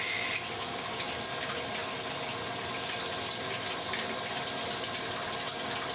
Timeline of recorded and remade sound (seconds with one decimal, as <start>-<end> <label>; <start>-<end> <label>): 0.0-5.9 recorded